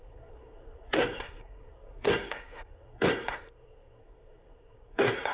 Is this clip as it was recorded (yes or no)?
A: no